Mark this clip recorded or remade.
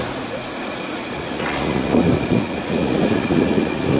remade